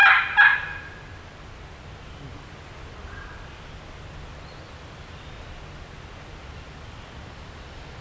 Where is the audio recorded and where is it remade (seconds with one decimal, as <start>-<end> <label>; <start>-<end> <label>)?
0.0-8.0 recorded